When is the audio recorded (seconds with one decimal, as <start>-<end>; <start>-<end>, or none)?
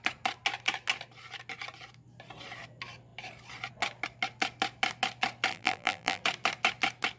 0.0-5.5; 6.2-7.2